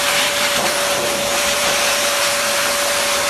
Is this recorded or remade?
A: remade